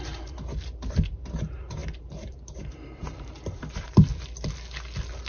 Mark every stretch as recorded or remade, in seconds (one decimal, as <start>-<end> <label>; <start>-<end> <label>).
0.0-4.1 remade; 4.1-5.3 recorded